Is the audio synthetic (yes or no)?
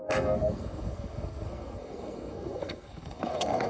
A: yes